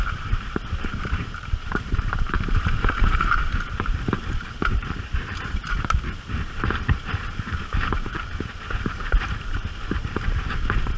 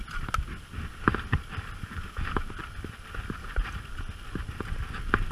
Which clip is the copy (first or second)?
first